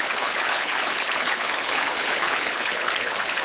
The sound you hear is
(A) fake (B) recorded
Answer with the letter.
A